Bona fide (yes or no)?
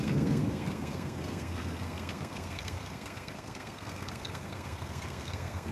no